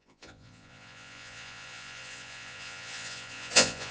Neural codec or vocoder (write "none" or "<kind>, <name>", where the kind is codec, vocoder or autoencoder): vocoder, Vocos